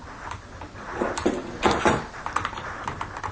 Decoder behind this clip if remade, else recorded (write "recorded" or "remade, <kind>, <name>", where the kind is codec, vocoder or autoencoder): recorded